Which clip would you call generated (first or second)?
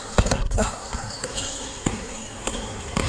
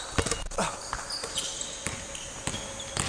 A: first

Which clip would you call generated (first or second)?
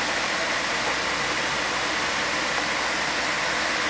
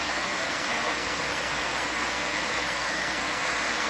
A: second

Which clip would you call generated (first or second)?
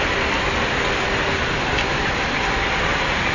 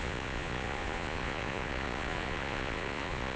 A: second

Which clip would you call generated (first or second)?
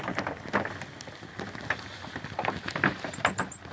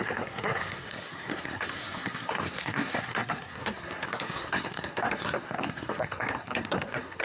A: second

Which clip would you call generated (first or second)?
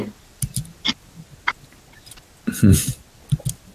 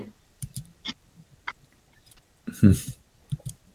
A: second